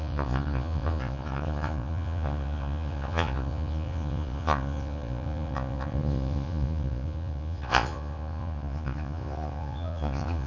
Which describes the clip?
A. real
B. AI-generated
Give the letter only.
B